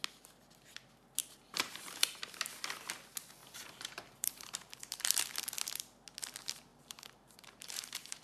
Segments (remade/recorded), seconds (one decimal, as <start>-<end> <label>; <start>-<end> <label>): 0.0-1.2 recorded; 1.2-2.6 remade; 2.6-3.4 recorded; 3.4-5.4 remade; 5.4-6.7 recorded; 6.7-8.2 remade